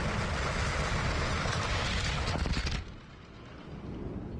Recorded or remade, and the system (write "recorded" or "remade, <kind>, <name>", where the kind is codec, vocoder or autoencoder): recorded